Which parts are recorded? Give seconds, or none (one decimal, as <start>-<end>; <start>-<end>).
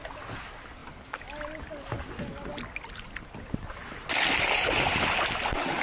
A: 0.0-5.8